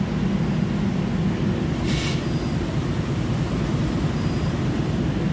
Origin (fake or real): real